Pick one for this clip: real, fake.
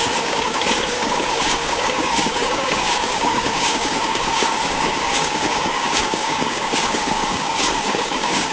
fake